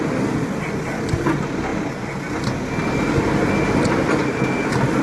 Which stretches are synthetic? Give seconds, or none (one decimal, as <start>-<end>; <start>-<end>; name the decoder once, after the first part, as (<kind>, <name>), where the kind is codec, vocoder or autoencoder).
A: none